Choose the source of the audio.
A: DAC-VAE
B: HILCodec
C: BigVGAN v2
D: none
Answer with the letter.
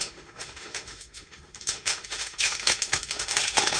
A